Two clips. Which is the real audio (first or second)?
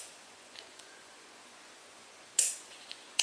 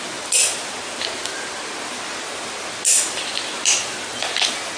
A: second